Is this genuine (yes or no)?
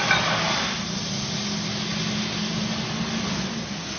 yes